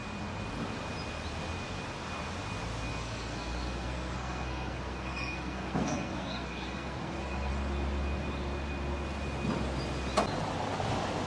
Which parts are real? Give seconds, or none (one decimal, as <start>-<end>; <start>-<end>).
0.0-2.9; 7.5-11.3